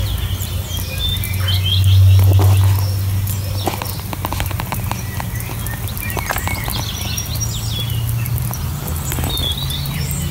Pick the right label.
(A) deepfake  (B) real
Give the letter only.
B